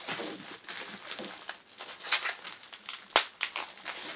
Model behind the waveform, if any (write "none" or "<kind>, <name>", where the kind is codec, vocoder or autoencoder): none